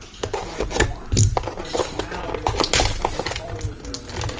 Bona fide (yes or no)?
yes